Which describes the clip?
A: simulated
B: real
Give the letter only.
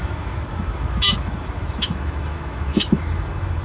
A